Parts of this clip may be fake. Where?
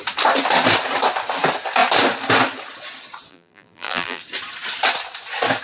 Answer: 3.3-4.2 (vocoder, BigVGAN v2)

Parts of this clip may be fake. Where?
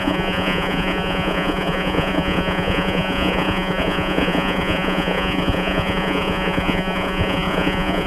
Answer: 0.0-8.1 (vocoder, Vocos)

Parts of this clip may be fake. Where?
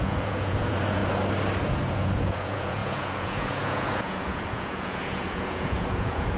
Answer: 0.0-1.0 (vocoder, Vocos); 1.6-6.4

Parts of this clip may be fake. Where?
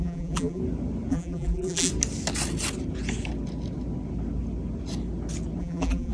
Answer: 0.0-0.6 (vocoder, BigVGAN v2); 1.1-1.9; 5.6-6.1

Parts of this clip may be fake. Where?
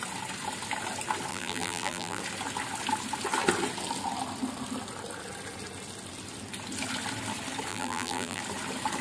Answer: 1.3-2.2 (vocoder, BigVGAN v2); 7.7-8.4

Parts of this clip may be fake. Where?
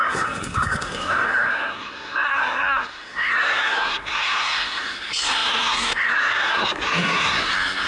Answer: 0.0-7.9 (codec, SNAC)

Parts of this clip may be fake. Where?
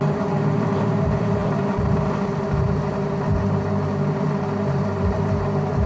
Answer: 0.0-5.9 (vocoder, BigVGAN v2)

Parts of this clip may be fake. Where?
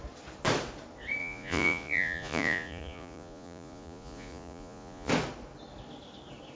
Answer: 1.2-5.1 (vocoder, Vocos)